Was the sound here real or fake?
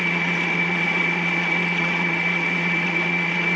fake